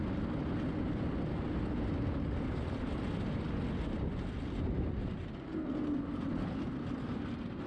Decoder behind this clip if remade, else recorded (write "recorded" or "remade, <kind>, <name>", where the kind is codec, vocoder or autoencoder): recorded